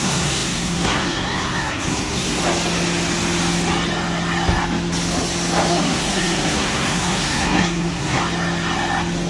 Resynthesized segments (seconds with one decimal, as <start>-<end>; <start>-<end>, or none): 0.0-2.4; 5.7-8.2